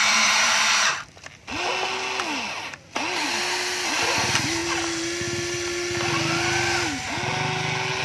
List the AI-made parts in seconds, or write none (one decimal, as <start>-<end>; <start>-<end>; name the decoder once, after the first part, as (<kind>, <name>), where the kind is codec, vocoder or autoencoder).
0.0-0.9 (vocoder, BigVGAN v2)